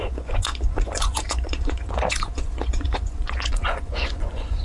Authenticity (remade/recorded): remade